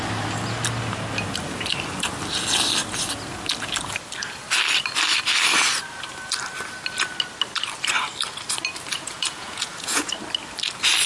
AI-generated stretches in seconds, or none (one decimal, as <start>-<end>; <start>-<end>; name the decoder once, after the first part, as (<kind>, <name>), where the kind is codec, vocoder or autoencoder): 8.9-10.1 (vocoder, Vocos)